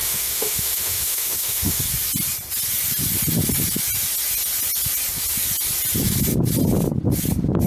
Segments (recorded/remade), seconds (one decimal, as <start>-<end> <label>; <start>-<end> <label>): 0.0-1.8 remade; 1.8-7.7 recorded